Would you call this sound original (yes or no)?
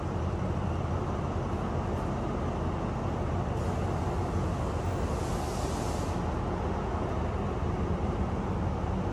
yes